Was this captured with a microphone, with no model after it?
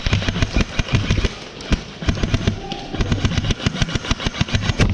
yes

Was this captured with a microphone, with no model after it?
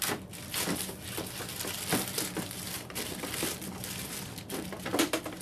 no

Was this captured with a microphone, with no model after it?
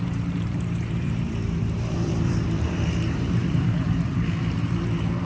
no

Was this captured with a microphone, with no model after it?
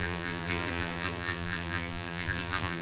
no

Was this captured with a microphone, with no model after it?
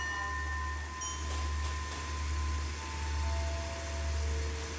yes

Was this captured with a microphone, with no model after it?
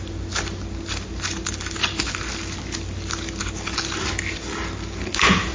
yes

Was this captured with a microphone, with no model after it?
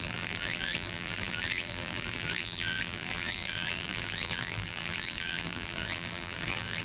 no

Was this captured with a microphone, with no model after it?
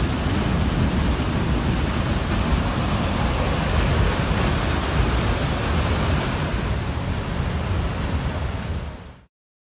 yes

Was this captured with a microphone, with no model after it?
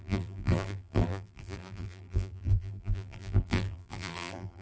no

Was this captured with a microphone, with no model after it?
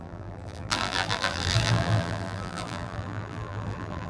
no